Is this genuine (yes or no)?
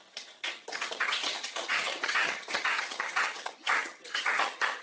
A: no